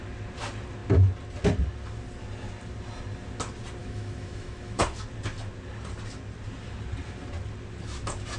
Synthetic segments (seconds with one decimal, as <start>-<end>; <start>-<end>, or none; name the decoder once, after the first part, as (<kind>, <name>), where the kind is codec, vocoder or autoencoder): 3.8-4.8 (autoencoder, DAC-VAE)